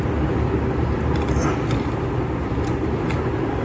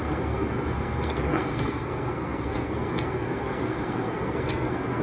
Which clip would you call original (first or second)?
first